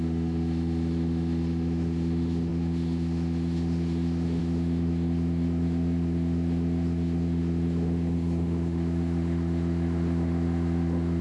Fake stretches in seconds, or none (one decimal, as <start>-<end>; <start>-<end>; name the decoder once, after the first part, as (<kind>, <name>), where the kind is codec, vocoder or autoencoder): 0.0-11.2 (autoencoder, DAC-VAE)